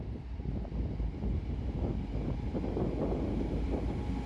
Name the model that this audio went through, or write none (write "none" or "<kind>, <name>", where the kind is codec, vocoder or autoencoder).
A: none